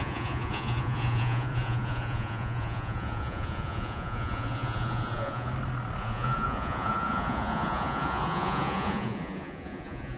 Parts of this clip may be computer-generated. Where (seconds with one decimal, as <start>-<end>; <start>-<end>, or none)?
0.0-5.5; 6.0-10.2